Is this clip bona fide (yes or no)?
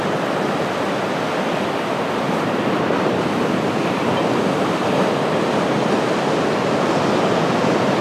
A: yes